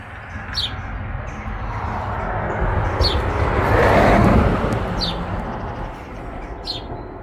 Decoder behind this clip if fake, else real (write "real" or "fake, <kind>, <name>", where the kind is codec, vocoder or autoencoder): real